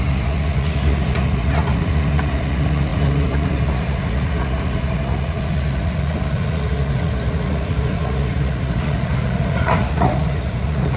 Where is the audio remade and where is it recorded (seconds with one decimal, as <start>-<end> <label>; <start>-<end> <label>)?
0.0-11.0 remade